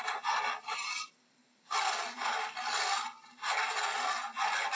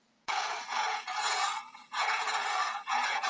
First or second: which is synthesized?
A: second